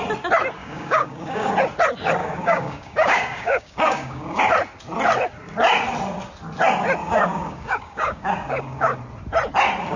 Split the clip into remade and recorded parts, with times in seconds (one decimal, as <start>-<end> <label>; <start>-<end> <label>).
0.0-0.6 recorded; 0.6-1.5 remade; 1.5-2.2 recorded; 2.2-4.4 remade; 4.4-7.0 recorded; 7.0-9.0 remade; 9.0-10.0 recorded